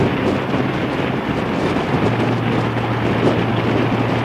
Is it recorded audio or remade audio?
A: recorded